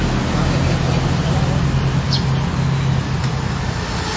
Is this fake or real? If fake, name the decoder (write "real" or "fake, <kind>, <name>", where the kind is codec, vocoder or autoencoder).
real